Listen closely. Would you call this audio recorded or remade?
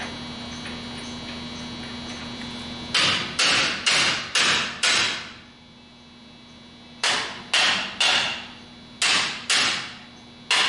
recorded